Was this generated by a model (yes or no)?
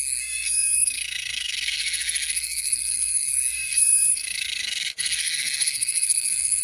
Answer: yes